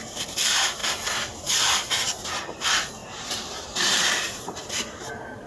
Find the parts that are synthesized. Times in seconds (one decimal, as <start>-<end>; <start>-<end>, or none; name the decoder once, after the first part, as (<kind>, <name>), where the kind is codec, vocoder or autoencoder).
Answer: 0.0-0.8 (vocoder, BigVGAN v2); 1.5-5.5